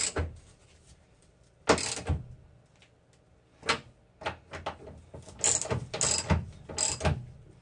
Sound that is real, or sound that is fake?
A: real